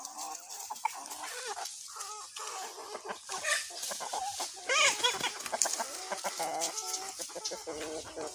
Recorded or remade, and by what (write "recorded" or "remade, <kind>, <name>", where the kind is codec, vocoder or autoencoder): recorded